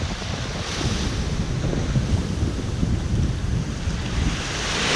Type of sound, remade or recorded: recorded